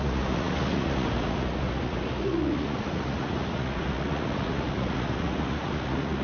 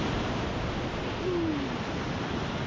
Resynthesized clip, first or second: first